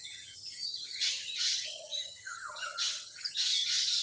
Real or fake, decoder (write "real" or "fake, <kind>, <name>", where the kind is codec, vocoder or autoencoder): fake, vocoder, HiFi-GAN